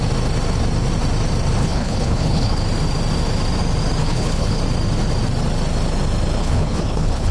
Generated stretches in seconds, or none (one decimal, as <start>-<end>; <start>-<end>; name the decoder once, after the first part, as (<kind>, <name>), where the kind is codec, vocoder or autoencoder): 1.6-2.6 (codec, HILCodec); 4.0-4.6; 6.4-7.3